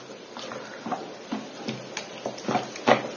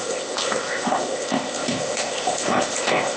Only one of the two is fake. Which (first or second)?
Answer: second